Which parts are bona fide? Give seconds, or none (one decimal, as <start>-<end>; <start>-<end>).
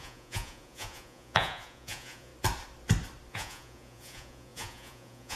2.3-3.3